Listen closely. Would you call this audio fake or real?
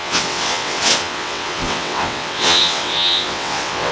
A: fake